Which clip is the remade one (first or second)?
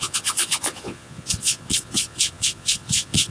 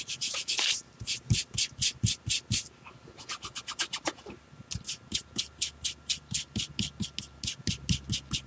first